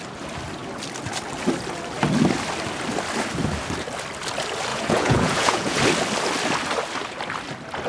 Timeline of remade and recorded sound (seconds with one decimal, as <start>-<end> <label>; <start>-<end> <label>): 0.0-4.7 recorded; 4.7-5.8 remade; 5.8-7.9 recorded